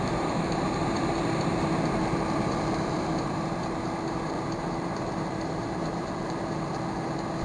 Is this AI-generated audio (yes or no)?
yes